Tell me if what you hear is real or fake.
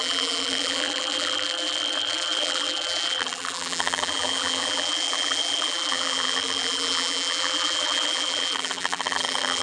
fake